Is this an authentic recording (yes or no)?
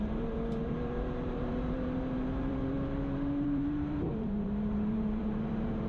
no